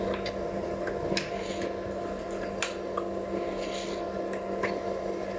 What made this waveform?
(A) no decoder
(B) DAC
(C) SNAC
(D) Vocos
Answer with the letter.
A